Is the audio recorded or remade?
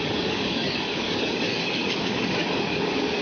remade